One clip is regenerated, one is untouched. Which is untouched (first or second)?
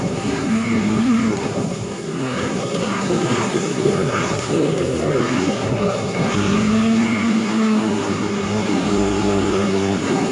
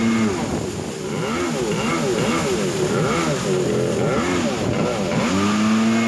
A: second